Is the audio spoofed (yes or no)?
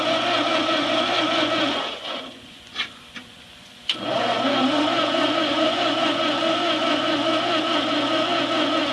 yes